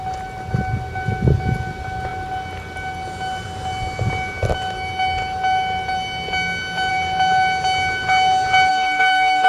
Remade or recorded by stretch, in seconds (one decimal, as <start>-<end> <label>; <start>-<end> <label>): 0.0-8.7 recorded; 8.7-9.5 remade